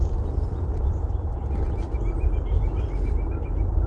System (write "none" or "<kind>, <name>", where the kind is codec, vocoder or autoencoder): none